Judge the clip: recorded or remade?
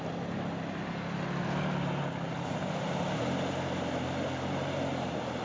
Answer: recorded